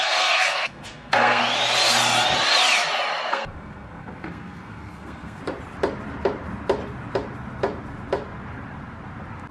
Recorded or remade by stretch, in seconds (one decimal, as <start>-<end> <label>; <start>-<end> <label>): 0.0-1.4 remade; 1.4-3.3 recorded; 3.3-5.4 remade; 5.4-9.5 recorded